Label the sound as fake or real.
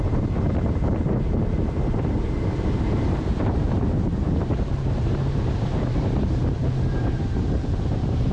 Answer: fake